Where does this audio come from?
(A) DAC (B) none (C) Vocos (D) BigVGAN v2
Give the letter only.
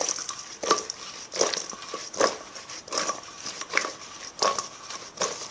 D